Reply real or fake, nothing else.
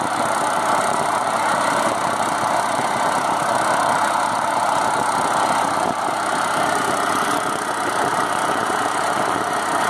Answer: real